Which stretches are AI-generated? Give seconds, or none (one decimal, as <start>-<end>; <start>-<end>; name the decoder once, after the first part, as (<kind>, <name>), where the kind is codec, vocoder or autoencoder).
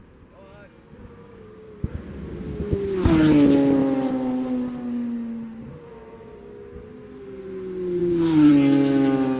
1.0-2.0 (codec, DAC); 8.0-8.5